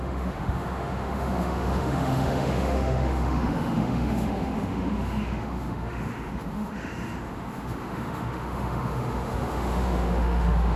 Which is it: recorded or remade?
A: remade